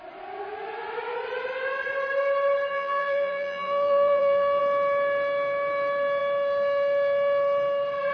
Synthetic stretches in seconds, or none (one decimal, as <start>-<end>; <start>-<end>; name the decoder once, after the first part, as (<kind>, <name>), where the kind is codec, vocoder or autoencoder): 2.7-4.6 (vocoder, BigVGAN v2)